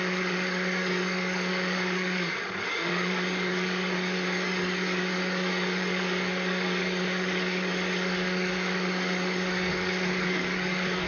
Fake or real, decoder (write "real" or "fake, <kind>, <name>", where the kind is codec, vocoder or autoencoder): fake, codec, DAC